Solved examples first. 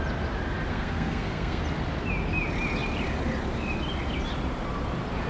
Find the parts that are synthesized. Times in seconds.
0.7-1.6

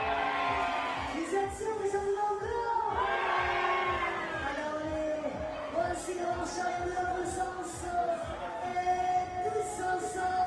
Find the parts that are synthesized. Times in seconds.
1.6-2.4

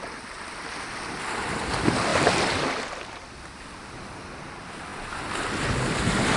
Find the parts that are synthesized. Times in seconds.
none

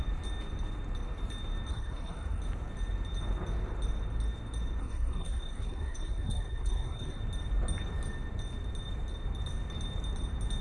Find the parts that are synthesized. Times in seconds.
1.7-2.4; 4.8-7.2

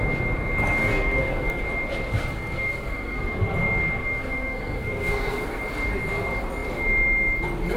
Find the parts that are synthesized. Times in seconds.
0.8-1.6; 2.1-3.2; 4.0-5.6